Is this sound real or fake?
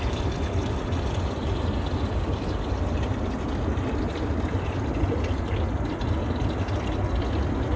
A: real